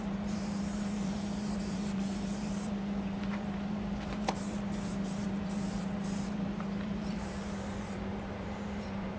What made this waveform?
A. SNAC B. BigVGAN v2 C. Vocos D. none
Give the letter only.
B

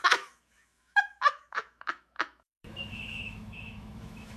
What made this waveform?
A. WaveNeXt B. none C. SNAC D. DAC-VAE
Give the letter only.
D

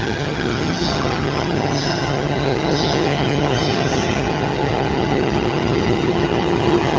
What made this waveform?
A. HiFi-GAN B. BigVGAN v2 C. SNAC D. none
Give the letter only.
A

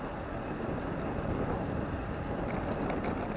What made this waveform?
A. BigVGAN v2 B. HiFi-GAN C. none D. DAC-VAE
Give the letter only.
C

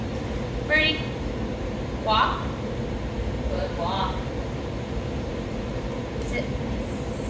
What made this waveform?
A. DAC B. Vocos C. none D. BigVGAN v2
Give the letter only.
D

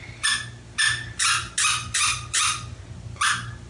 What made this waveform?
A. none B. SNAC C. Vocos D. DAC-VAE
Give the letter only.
A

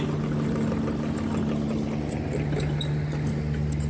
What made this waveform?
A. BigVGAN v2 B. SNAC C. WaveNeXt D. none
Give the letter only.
D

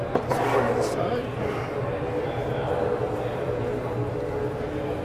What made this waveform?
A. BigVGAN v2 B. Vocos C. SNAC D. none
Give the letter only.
D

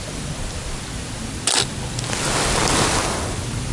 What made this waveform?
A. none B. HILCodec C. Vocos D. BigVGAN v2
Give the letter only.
A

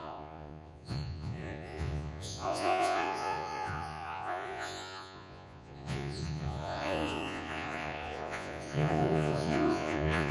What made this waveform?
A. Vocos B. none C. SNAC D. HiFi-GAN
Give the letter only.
A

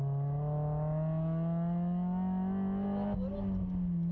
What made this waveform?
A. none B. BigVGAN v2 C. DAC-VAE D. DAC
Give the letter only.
A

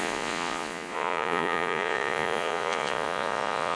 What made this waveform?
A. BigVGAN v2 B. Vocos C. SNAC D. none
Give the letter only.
B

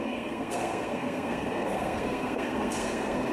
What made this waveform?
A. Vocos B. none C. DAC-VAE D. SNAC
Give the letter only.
D